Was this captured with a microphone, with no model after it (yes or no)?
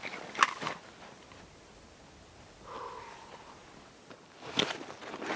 yes